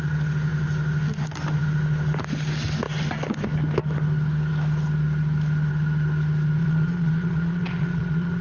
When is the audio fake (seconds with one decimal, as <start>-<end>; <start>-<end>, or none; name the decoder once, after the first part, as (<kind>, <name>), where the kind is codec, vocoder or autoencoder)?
6.6-8.4 (vocoder, Vocos)